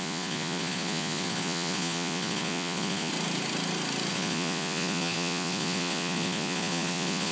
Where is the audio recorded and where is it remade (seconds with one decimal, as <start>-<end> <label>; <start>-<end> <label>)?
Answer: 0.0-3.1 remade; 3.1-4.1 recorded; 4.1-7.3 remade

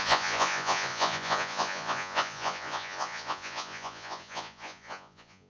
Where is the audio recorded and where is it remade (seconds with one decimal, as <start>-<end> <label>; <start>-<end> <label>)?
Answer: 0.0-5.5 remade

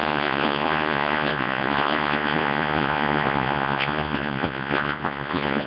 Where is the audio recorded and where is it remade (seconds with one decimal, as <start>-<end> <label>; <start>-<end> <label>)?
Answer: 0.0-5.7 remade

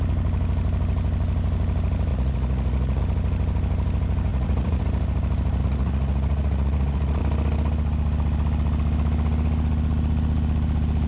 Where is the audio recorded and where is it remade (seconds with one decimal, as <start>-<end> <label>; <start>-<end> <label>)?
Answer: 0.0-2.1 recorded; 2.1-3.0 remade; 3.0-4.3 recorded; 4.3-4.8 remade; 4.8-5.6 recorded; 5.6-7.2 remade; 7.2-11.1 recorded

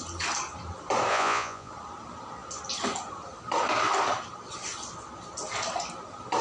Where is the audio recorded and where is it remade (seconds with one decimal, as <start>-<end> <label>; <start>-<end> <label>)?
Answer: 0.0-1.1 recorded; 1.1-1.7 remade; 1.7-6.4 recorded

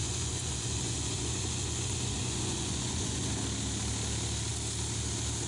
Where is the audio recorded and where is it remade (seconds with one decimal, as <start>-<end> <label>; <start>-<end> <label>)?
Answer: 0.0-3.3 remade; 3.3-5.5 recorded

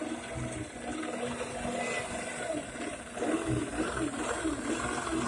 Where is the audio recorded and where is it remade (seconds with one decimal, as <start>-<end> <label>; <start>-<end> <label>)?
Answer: 0.0-5.3 recorded